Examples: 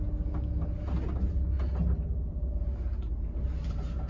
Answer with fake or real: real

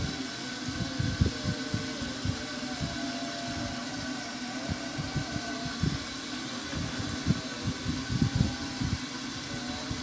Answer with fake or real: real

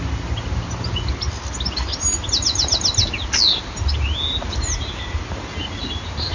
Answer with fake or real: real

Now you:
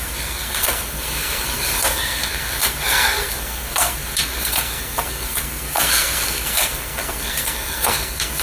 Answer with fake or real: fake